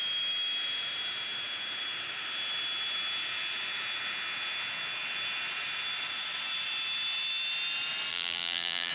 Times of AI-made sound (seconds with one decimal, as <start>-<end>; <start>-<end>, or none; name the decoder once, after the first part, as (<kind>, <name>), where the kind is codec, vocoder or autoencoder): 8.1-8.9 (vocoder, BigVGAN v2)